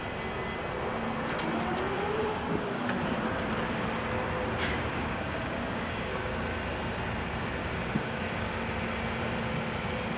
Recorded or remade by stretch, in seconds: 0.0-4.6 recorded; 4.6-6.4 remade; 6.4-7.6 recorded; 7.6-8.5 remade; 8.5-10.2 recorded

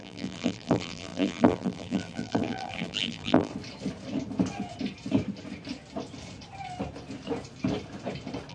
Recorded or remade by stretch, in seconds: 0.0-3.5 remade; 3.5-8.5 recorded

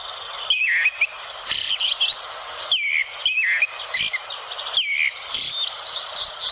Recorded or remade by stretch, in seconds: 0.0-6.5 recorded

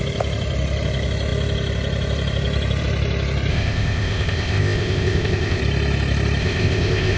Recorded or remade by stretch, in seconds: 0.0-3.5 recorded; 3.5-5.6 remade; 5.6-6.4 recorded; 6.4-7.2 remade

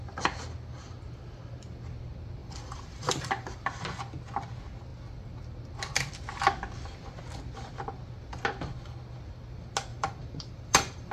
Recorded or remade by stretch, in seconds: 0.0-2.4 recorded; 2.4-3.7 remade; 3.7-9.9 recorded; 9.9-11.1 remade

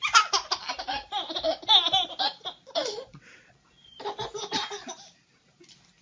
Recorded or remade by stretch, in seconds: 0.0-6.0 recorded

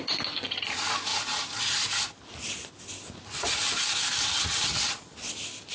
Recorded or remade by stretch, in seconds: 0.0-5.7 recorded

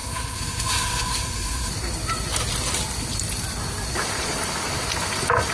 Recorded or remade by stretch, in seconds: 0.0-1.7 remade; 1.7-5.5 recorded